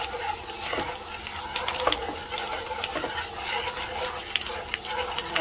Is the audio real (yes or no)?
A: yes